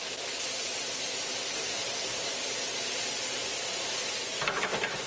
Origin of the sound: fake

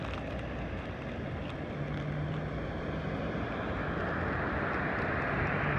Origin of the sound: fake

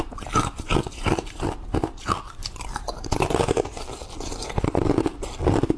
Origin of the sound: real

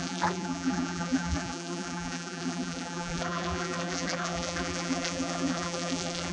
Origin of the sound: fake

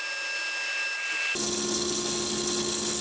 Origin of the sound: real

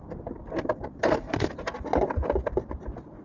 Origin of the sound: real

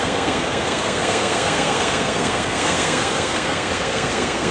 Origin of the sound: fake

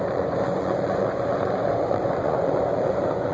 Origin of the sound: fake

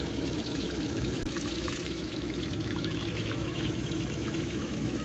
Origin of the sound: fake